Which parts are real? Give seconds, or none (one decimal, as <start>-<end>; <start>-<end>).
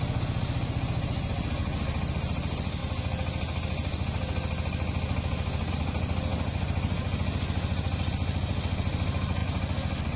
0.0-10.2